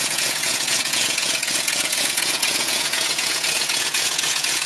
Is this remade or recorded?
remade